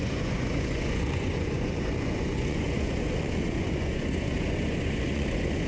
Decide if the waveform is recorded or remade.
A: remade